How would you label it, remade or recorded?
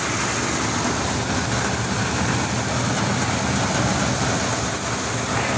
recorded